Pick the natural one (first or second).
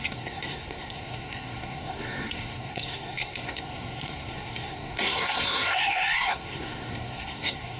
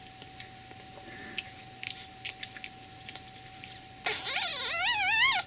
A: second